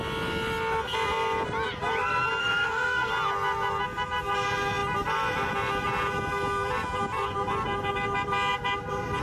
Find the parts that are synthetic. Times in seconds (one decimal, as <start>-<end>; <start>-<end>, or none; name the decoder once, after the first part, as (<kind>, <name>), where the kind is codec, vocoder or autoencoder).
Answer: 2.4-3.1 (codec, SNAC)